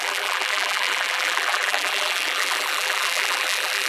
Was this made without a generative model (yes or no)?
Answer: no